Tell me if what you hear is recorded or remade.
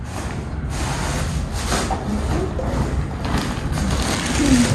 recorded